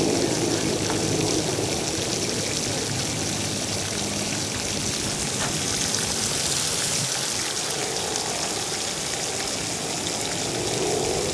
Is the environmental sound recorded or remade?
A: recorded